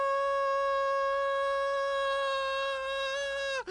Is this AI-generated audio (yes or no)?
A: no